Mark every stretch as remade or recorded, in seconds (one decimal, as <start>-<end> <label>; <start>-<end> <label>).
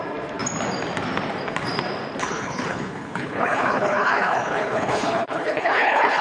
0.0-2.2 recorded; 2.2-6.2 remade